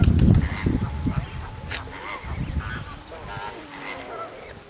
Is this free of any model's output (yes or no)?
yes